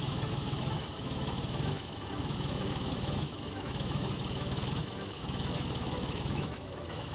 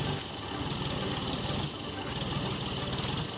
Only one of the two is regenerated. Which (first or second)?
first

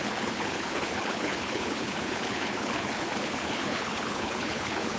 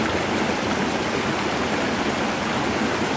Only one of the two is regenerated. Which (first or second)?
first